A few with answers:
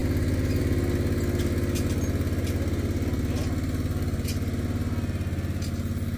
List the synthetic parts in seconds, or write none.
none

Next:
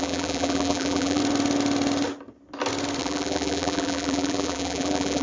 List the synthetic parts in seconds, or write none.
0.0-1.2 (vocoder, BigVGAN v2); 3.0-5.2